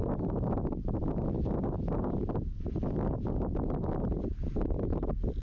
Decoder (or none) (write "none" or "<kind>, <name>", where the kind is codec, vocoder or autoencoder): none